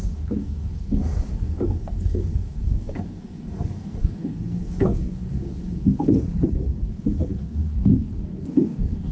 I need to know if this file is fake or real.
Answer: fake